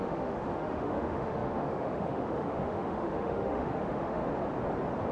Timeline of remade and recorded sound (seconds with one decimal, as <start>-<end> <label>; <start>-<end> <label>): 0.0-4.2 remade; 4.2-5.1 recorded

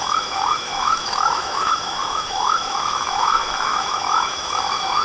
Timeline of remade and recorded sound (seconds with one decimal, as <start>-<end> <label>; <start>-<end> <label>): 0.0-5.0 remade

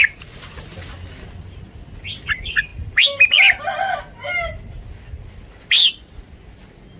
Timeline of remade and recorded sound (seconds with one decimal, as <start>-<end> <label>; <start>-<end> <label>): 0.0-7.0 recorded

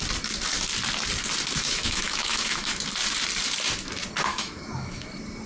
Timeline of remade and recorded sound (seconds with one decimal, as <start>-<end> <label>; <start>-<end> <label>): 0.0-1.6 recorded; 1.6-2.8 remade; 2.8-4.3 recorded; 4.3-5.1 remade; 5.1-5.5 recorded

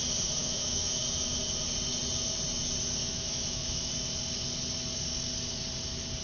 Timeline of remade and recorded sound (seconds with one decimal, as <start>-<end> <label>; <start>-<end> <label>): 0.0-0.4 recorded; 0.4-1.0 remade; 1.0-3.0 recorded; 3.0-3.9 remade; 3.9-6.2 recorded

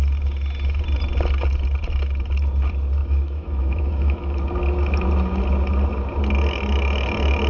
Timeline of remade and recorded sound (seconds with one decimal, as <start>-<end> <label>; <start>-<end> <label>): 0.0-3.0 recorded; 3.0-4.4 remade; 4.4-7.5 recorded

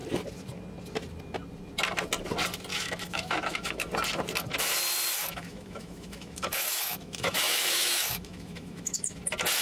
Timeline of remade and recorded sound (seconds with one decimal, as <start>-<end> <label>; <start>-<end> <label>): 0.0-2.7 recorded; 2.7-3.9 remade; 3.9-5.2 recorded; 5.2-9.2 remade; 9.2-9.6 recorded

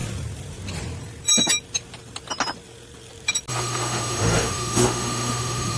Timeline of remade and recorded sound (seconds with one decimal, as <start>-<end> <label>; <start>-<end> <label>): 0.0-3.5 recorded; 3.5-5.8 remade